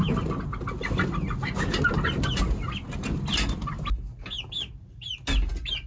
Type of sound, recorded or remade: recorded